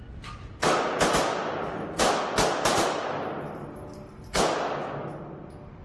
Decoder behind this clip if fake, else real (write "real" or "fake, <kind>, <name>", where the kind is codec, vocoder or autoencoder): real